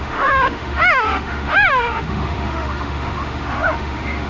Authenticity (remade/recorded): remade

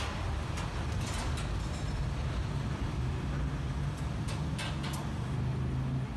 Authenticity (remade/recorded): recorded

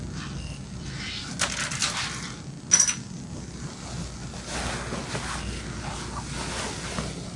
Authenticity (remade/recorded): recorded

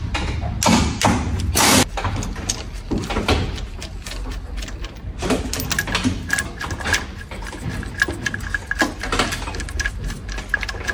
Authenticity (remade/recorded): recorded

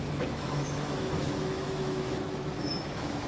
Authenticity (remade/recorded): remade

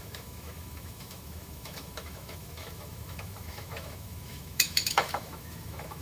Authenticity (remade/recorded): remade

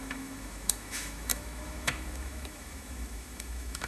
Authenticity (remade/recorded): remade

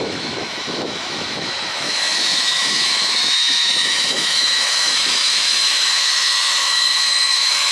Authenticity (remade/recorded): remade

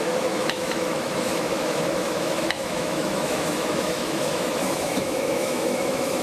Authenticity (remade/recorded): remade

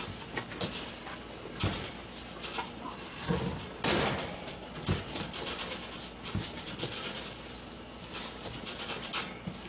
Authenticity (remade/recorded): recorded